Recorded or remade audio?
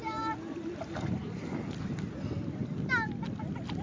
recorded